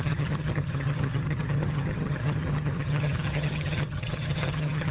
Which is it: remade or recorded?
remade